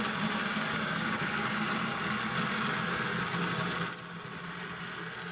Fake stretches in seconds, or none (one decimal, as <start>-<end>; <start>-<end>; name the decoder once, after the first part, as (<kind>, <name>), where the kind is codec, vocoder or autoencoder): 0.5-1.7 (codec, DAC)